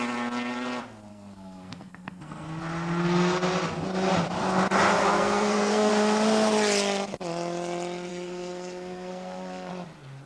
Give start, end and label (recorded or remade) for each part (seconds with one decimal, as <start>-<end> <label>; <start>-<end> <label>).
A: 0.0-1.1 recorded; 1.1-2.6 remade; 2.6-5.0 recorded; 5.0-5.9 remade; 5.9-8.1 recorded; 8.1-9.7 remade; 9.7-10.3 recorded